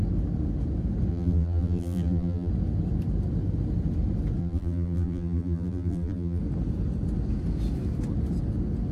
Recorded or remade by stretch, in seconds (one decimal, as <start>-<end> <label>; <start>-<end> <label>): 0.0-1.1 recorded; 1.1-2.5 remade; 2.5-4.4 recorded; 4.4-6.4 remade; 6.4-8.9 recorded